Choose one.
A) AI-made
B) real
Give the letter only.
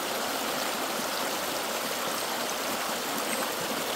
B